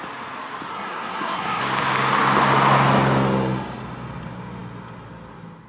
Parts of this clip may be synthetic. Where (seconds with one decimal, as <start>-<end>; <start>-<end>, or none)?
0.7-1.6